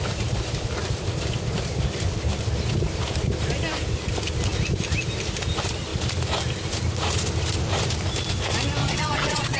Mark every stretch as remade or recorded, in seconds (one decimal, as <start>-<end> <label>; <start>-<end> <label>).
0.0-8.8 recorded; 8.8-9.6 remade